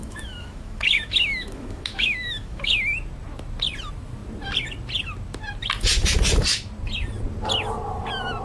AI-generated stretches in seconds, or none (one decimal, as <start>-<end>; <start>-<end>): 0.0-2.7